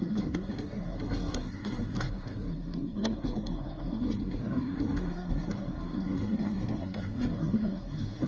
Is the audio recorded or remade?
remade